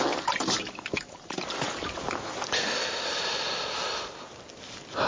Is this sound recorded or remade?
recorded